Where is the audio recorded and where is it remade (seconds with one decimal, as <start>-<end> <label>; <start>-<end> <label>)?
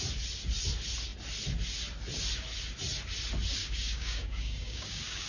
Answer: 0.0-3.6 recorded; 3.6-5.3 remade